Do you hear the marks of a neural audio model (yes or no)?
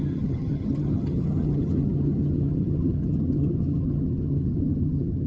yes